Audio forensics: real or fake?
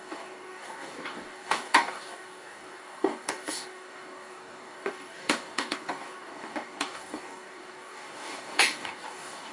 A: fake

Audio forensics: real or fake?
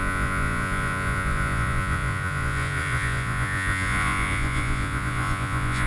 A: fake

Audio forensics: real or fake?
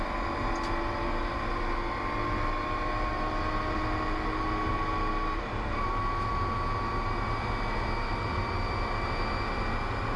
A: real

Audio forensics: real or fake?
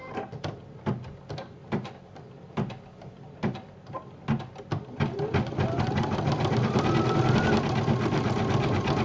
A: real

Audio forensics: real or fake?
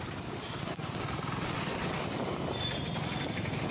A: real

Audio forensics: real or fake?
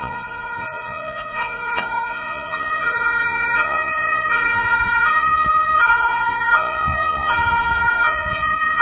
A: fake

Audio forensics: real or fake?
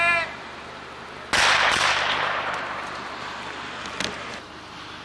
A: real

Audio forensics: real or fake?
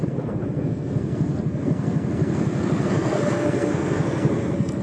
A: fake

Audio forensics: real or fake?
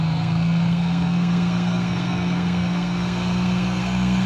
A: fake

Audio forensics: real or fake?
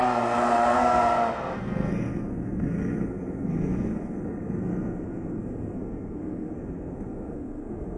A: fake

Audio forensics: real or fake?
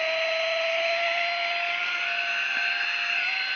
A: real